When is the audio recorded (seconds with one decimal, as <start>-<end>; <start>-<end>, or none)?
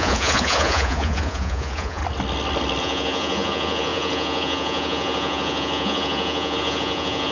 2.0-2.8